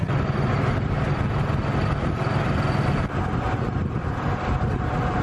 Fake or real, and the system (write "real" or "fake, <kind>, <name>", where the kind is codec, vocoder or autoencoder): real